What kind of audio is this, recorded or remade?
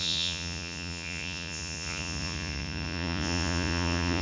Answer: remade